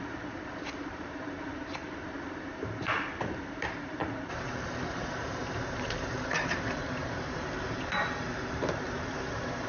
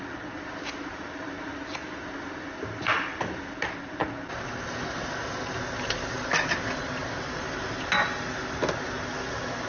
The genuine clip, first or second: second